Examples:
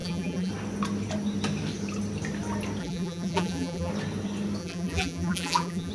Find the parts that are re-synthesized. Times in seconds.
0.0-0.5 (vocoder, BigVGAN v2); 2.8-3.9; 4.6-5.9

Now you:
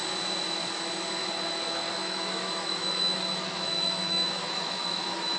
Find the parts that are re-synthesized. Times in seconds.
2.0-5.4 (autoencoder, DAC-VAE)

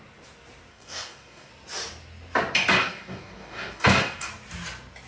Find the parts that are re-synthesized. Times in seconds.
0.7-1.5 (codec, DAC); 2.8-4.3

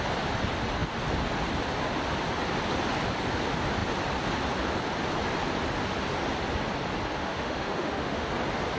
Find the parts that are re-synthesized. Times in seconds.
7.2-8.3 (autoencoder, DAC-VAE)

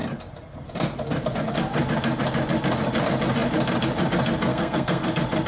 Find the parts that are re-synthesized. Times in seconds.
4.5-5.1 (codec, SNAC)